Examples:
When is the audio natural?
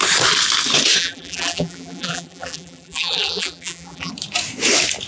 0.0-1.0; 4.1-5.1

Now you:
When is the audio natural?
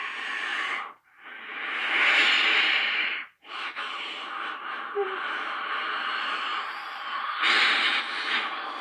0.0-0.5; 5.7-6.5; 7.3-8.8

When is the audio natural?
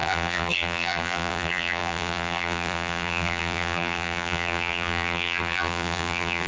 none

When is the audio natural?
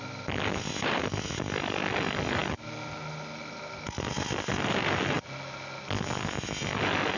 0.0-7.2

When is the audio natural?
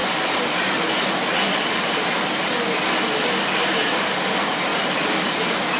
0.0-4.7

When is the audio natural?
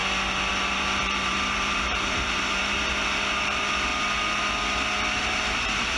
0.0-0.5; 3.9-5.2